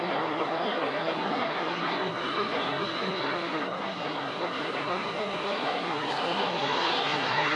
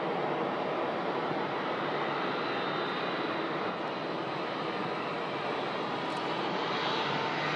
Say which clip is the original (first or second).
second